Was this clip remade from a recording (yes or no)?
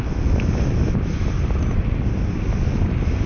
no